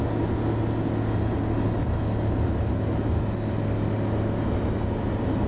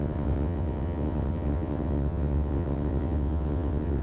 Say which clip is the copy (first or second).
second